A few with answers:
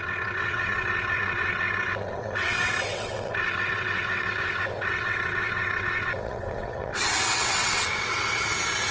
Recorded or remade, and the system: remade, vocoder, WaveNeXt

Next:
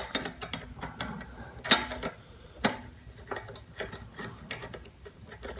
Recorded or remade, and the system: recorded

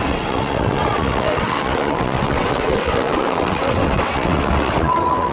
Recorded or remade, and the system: remade, vocoder, WaveNeXt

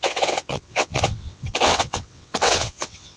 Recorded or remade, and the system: remade, vocoder, WaveNeXt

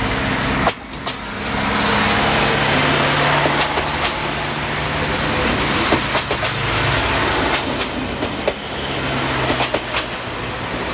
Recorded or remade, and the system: recorded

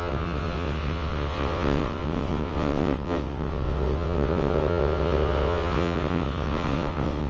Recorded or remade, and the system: remade, vocoder, WaveNeXt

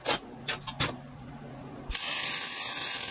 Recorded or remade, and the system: recorded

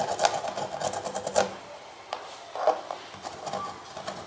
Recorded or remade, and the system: recorded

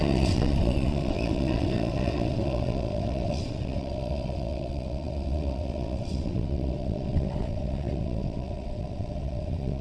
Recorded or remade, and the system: remade, vocoder, WaveNeXt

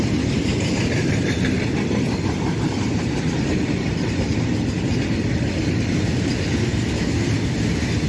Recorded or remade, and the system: recorded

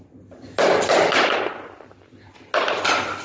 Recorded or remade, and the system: recorded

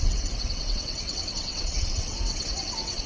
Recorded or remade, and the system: remade, vocoder, WaveNeXt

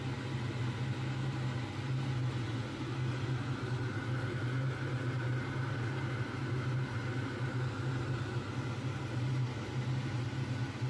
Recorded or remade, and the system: recorded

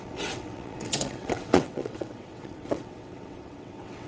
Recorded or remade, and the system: remade, vocoder, WaveNeXt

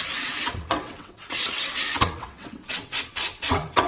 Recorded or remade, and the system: remade, vocoder, WaveNeXt